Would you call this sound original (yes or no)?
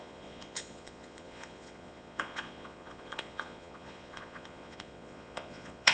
no